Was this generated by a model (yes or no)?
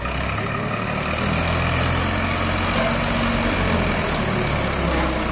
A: no